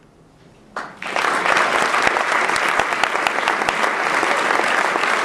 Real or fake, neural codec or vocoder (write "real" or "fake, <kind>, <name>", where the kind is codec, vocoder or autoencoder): real